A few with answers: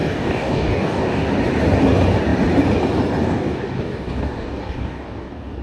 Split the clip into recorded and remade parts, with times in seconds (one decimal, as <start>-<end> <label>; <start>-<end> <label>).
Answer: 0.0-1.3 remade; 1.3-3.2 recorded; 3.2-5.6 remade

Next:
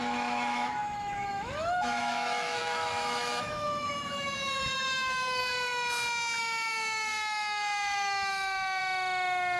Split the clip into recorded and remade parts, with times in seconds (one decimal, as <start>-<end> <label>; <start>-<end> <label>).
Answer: 0.0-5.4 remade; 5.4-6.4 recorded; 6.4-8.8 remade; 8.8-9.6 recorded

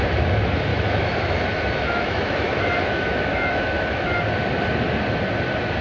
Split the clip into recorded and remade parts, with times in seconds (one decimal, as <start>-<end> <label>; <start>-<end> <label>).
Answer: 0.0-0.7 recorded; 0.7-4.2 remade; 4.2-5.8 recorded

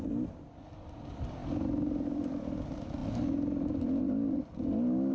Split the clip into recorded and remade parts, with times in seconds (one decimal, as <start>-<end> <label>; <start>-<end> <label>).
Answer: 0.0-5.1 recorded